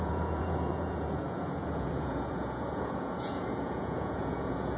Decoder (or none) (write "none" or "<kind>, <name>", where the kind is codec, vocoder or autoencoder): vocoder, Vocos